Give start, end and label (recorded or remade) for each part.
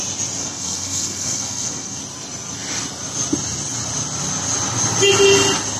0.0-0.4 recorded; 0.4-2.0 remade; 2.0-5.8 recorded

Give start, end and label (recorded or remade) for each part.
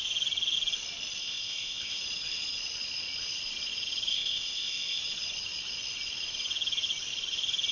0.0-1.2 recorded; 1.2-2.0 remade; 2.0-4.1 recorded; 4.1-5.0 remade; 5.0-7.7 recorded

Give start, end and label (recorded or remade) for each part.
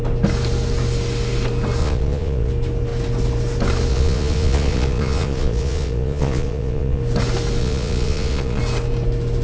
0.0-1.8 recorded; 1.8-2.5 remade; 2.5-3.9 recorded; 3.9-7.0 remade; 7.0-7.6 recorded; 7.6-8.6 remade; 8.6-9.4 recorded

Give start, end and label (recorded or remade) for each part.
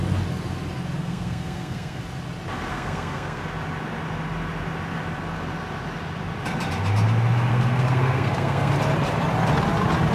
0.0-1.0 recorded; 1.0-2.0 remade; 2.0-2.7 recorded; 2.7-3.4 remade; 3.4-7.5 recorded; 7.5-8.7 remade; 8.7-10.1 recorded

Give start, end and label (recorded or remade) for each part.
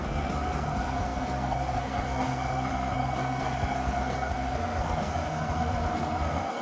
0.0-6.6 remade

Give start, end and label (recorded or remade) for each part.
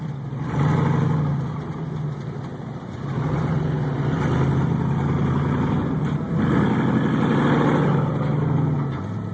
0.0-9.3 recorded